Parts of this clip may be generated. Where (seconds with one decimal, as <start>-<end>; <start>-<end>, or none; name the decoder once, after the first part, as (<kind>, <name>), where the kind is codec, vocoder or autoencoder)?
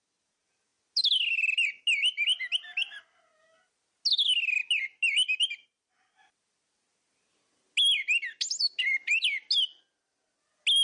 none